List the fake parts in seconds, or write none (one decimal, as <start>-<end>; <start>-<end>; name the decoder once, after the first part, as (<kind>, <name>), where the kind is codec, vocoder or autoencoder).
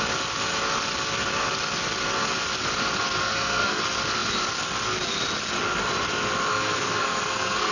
3.2-3.8 (codec, SNAC); 6.5-7.7